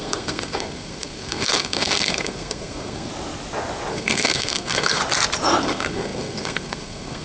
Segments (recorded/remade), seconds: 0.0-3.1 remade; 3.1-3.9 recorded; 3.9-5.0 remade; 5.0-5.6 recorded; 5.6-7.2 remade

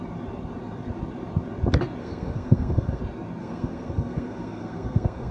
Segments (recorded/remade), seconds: 0.0-2.0 recorded; 2.0-3.0 remade; 3.0-3.4 recorded; 3.4-5.3 remade

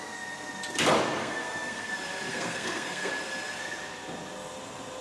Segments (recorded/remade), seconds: 0.0-1.2 recorded; 1.2-1.9 remade; 1.9-2.3 recorded; 2.3-3.1 remade; 3.1-5.0 recorded

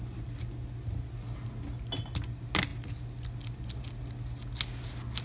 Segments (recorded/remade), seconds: 0.0-5.2 recorded